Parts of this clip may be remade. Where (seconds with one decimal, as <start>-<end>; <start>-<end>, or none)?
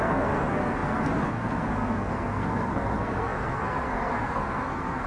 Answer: 0.0-5.1